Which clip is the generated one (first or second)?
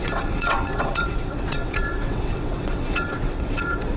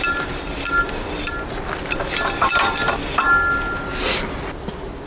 first